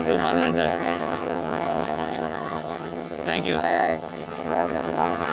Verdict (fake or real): fake